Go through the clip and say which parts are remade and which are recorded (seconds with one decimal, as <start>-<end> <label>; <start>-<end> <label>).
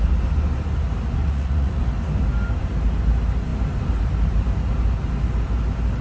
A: 0.0-1.2 recorded; 1.2-1.8 remade; 1.8-6.0 recorded